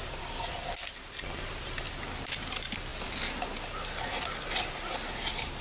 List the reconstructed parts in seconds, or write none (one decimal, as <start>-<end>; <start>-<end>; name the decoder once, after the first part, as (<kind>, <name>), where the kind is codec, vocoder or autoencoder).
none

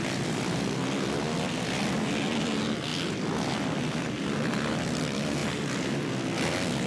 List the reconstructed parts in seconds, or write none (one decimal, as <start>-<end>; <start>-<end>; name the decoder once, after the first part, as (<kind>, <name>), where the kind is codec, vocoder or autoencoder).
none

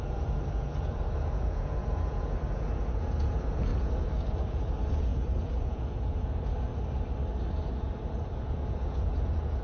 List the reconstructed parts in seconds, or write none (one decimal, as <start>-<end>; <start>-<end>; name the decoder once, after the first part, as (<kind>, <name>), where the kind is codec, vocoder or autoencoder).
0.0-6.7 (vocoder, Vocos); 7.7-9.6